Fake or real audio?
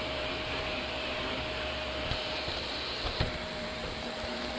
fake